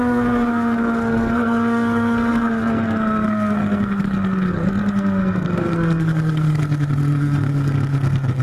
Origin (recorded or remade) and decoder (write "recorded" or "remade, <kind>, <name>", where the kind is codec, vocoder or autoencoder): remade, codec, SNAC